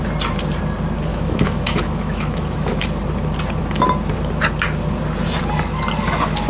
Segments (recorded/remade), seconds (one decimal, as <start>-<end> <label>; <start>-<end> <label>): 0.0-1.1 recorded; 1.1-2.8 remade; 2.8-6.5 recorded